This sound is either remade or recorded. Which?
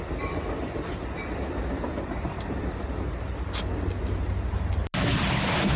recorded